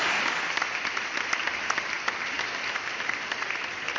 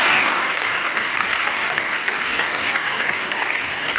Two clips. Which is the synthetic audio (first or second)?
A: second